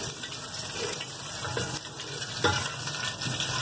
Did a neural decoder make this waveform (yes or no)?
no